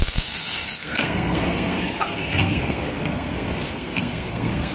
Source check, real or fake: fake